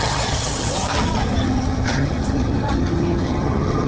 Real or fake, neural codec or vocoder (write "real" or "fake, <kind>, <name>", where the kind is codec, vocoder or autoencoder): fake, vocoder, HiFi-GAN